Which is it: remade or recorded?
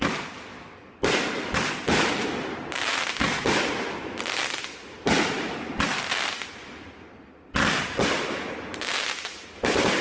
recorded